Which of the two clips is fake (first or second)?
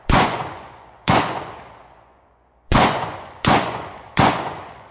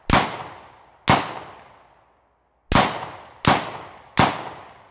first